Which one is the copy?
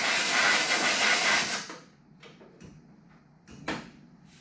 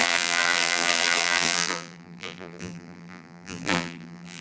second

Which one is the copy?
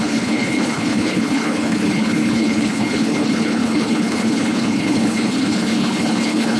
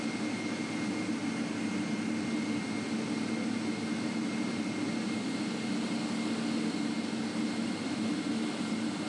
first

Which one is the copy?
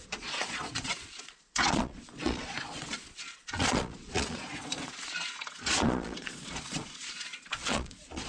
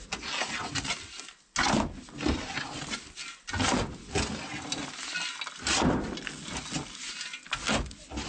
first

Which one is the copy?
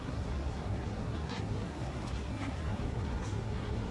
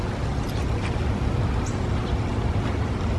first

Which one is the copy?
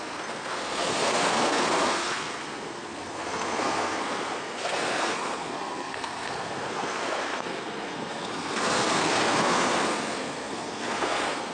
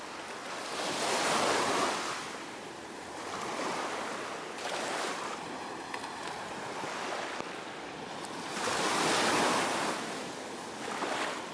first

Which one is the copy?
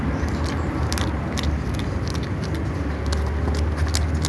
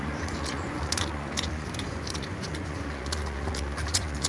second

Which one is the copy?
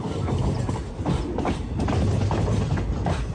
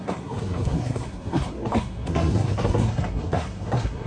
second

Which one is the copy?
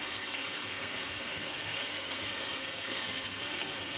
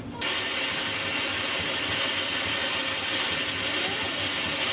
first